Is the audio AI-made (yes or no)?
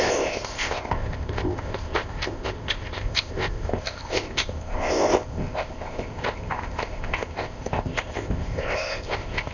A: yes